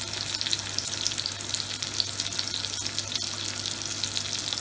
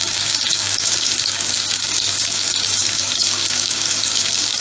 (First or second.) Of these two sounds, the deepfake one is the second